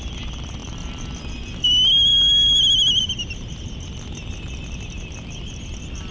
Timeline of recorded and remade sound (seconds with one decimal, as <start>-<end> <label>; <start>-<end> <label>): 0.0-6.1 recorded